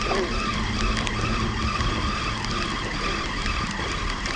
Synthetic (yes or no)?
no